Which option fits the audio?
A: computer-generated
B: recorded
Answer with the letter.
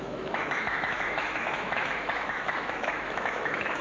A